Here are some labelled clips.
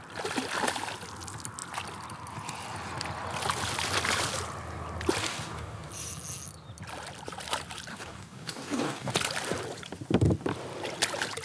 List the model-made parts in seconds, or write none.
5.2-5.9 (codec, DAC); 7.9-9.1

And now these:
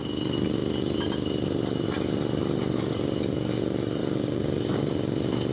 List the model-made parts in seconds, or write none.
4.0-4.7 (codec, DAC)

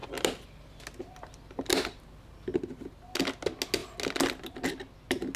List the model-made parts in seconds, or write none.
none

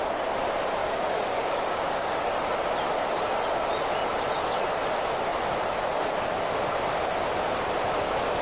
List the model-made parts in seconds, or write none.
0.8-2.2 (codec, DAC)

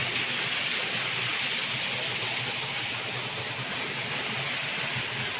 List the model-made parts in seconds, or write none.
none

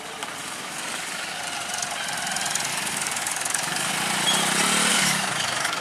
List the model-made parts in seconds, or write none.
0.4-1.4 (codec, DAC); 2.7-3.9; 4.9-5.8

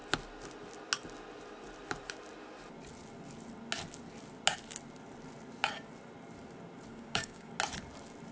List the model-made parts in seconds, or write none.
6.9-7.5 (codec, DAC)

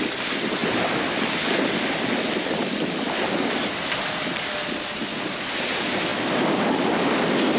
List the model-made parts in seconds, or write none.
none